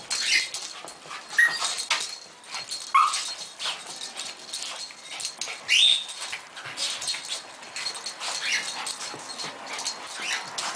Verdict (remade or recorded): recorded